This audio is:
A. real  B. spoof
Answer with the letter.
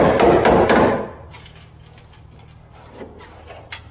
A